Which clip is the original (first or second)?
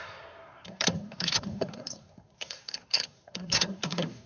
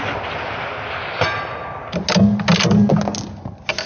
second